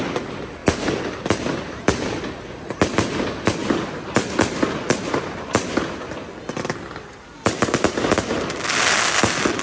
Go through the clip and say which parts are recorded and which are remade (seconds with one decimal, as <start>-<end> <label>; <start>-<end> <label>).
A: 0.0-9.6 recorded